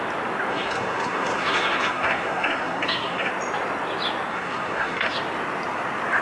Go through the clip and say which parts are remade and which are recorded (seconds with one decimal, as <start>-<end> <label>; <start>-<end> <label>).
0.0-0.5 recorded; 0.5-3.3 remade; 3.3-4.3 recorded; 4.3-5.2 remade; 5.2-6.2 recorded